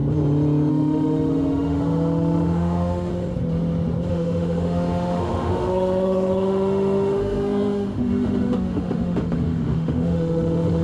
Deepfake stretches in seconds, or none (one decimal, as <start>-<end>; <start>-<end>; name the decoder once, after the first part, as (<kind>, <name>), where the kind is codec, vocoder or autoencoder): 0.7-3.1 (autoencoder, DAC-VAE); 4.1-10.8